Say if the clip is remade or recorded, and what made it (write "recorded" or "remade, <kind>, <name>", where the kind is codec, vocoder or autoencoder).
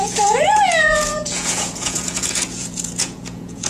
remade, vocoder, Vocos